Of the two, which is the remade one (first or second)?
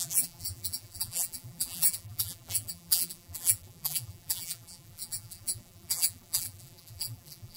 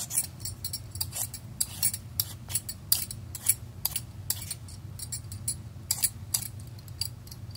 first